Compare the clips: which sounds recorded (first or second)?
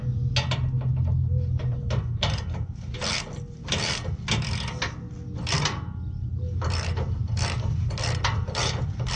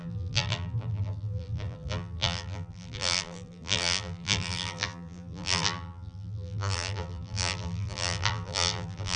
first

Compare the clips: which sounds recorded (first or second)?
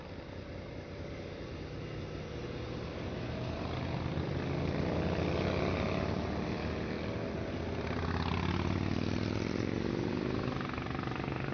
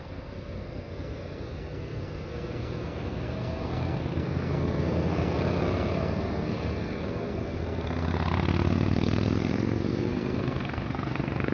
first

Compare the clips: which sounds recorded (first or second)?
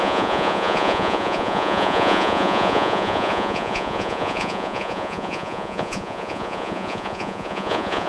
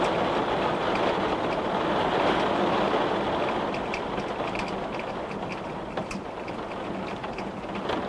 second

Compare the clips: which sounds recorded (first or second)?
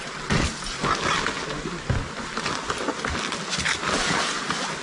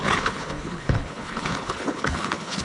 first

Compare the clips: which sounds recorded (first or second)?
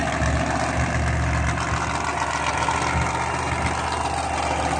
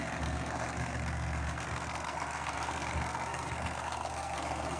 first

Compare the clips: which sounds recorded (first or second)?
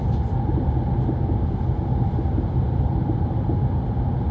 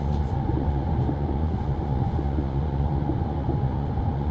first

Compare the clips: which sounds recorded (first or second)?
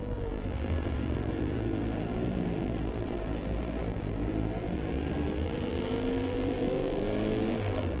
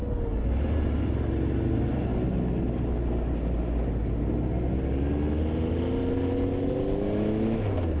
second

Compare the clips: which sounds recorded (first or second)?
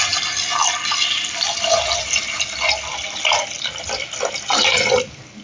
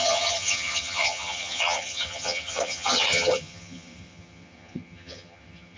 first